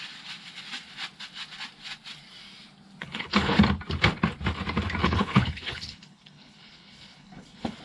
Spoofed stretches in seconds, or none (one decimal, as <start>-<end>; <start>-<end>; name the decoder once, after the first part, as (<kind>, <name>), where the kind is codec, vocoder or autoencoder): 3.0-3.6 (codec, HILCodec); 5.0-7.8